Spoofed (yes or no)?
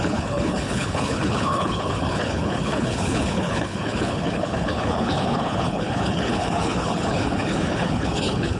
yes